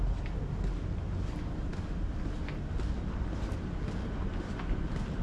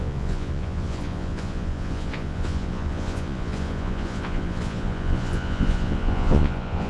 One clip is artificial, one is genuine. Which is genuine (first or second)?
first